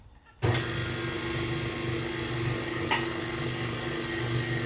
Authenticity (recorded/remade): recorded